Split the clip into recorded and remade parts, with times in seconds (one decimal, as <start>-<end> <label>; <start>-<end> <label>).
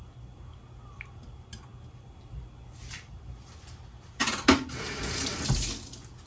0.0-6.3 recorded